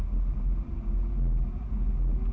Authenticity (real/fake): real